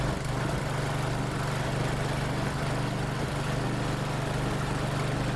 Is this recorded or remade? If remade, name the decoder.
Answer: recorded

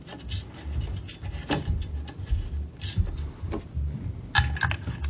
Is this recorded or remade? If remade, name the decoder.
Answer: recorded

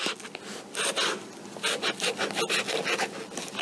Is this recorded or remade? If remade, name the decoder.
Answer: recorded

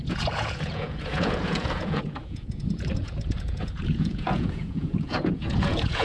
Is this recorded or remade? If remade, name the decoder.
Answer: remade, vocoder, Vocos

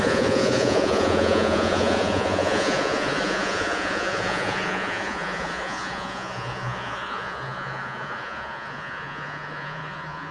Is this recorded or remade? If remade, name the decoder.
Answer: remade, vocoder, Vocos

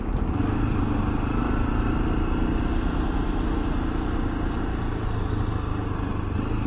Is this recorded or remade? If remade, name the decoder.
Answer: recorded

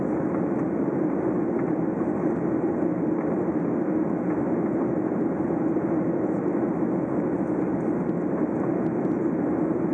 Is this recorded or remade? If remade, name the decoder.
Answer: recorded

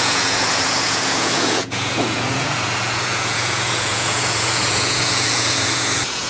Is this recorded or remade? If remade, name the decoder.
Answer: remade, vocoder, Vocos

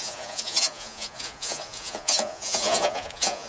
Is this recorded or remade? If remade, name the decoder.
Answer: remade, vocoder, Vocos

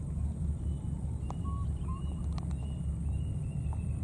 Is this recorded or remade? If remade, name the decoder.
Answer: recorded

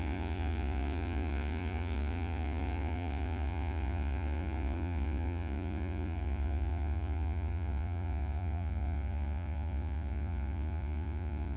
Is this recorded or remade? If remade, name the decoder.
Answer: remade, vocoder, Vocos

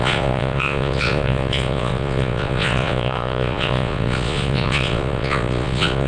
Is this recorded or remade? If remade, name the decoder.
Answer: remade, vocoder, Vocos